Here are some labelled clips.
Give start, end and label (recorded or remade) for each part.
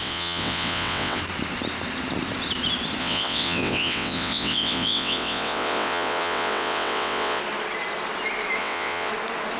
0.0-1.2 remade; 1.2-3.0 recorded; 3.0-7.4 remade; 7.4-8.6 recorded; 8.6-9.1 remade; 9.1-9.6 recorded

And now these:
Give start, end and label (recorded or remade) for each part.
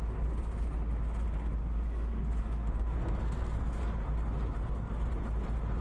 0.0-1.6 recorded; 1.6-3.8 remade; 3.8-5.8 recorded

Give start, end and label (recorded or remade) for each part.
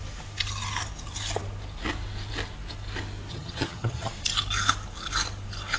0.0-3.3 recorded; 3.3-4.1 remade; 4.1-5.8 recorded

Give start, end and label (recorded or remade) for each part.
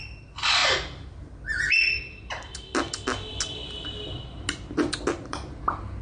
0.0-6.0 recorded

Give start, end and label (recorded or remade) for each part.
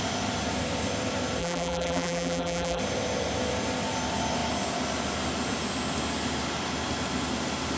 0.0-1.4 recorded; 1.4-2.8 remade; 2.8-7.8 recorded